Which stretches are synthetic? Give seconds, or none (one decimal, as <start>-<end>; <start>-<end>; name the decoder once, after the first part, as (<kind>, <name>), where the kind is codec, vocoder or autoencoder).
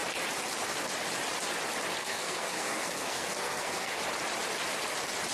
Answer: 2.0-4.0 (codec, SNAC)